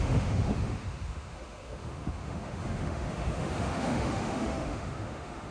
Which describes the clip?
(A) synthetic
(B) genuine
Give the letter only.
A